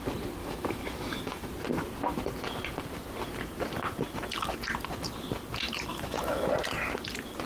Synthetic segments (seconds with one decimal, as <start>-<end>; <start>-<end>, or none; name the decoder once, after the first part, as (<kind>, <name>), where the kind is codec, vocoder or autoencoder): 0.4-1.5 (autoencoder, DAC-VAE); 5.9-6.5

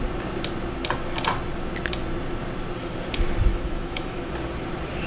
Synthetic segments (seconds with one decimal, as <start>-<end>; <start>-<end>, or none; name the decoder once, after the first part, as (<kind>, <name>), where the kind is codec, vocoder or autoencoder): 3.5-4.3 (autoencoder, DAC-VAE)

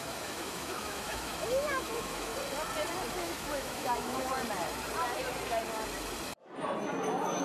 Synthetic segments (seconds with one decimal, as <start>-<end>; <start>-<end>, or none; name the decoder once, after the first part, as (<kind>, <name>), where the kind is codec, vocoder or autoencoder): 0.0-2.3 (autoencoder, DAC-VAE); 3.1-4.3

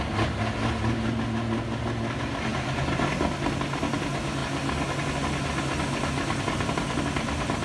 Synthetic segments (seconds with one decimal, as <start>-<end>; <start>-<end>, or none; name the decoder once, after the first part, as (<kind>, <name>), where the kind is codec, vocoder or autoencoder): none